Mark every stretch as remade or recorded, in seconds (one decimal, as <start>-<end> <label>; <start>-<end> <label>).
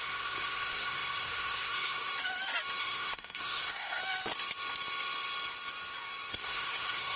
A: 0.0-2.1 remade; 2.1-2.8 recorded; 2.8-4.0 remade; 4.0-6.3 recorded; 6.3-7.2 remade